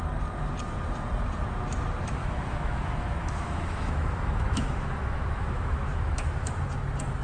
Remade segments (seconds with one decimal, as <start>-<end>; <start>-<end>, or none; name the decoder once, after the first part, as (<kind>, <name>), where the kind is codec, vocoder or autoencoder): 2.2-6.5 (autoencoder, DAC-VAE)